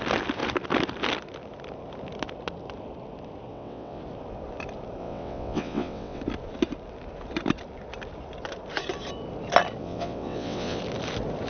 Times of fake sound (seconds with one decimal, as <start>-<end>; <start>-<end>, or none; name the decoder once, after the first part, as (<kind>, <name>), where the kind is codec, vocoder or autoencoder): 3.5-4.0 (vocoder, WaveNeXt); 5.0-6.2; 9.8-10.8